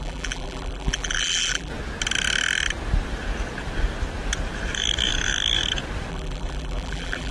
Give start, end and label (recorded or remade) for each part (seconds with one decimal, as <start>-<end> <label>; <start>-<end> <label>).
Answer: 0.0-1.7 remade; 1.7-6.1 recorded; 6.1-7.3 remade